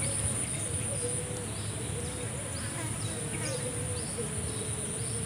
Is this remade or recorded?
recorded